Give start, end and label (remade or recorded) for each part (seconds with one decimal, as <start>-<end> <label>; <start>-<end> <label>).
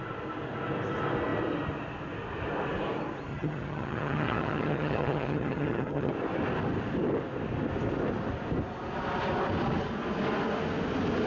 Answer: 0.0-3.3 recorded; 3.3-6.1 remade; 6.1-11.3 recorded